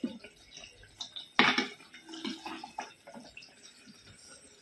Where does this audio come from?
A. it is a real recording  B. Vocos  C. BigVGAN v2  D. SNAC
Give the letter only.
A